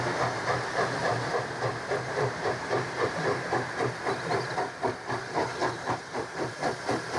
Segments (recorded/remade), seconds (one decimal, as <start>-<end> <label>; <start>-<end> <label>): 0.0-1.0 recorded; 1.0-3.9 remade; 3.9-5.6 recorded; 5.6-6.5 remade; 6.5-7.2 recorded